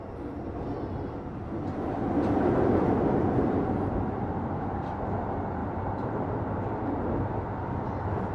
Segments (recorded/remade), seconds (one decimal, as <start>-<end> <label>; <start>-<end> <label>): 0.0-8.3 recorded